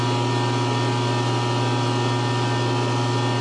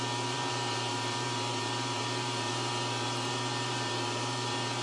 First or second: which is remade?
second